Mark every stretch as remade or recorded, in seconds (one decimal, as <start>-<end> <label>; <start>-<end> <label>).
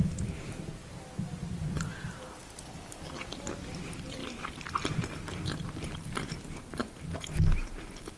0.0-4.2 remade; 4.2-5.3 recorded; 5.3-6.8 remade; 6.8-8.2 recorded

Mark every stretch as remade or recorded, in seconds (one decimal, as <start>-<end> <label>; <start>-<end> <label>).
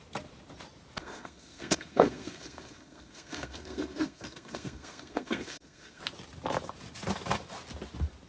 0.0-1.0 recorded; 1.0-6.0 remade; 6.0-8.3 recorded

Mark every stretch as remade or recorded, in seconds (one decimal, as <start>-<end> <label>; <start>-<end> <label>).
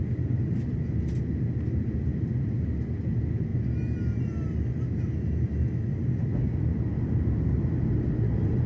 0.0-8.7 recorded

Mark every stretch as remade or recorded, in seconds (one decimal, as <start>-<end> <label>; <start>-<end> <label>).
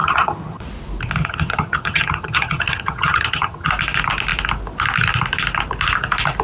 0.0-0.7 remade; 0.7-1.2 recorded; 1.2-3.7 remade; 3.7-6.4 recorded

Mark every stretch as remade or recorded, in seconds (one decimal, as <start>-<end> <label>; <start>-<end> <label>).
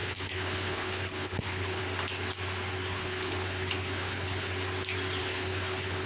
0.0-1.8 remade; 1.8-2.9 recorded; 2.9-4.5 remade; 4.5-5.2 recorded; 5.2-6.1 remade